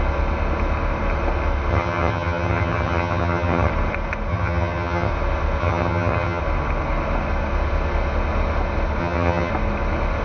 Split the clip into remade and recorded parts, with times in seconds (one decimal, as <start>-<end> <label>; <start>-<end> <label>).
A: 0.0-1.7 recorded; 1.7-3.7 remade; 3.7-4.3 recorded; 4.3-5.1 remade; 5.1-5.6 recorded; 5.6-6.4 remade; 6.4-9.0 recorded; 9.0-9.5 remade; 9.5-10.2 recorded